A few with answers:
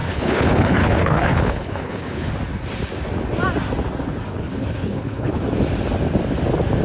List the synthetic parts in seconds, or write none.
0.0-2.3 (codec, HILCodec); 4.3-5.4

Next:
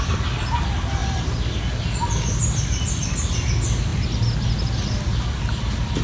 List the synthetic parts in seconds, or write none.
none

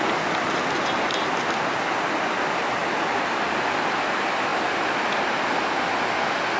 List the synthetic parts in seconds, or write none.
none